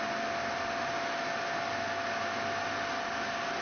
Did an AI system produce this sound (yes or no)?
no